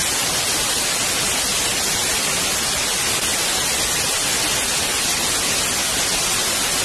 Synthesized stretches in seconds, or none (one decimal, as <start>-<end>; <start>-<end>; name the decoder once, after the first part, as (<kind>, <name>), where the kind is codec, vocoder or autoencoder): none